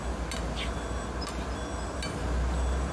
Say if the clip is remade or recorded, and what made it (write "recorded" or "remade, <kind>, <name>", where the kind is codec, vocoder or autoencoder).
recorded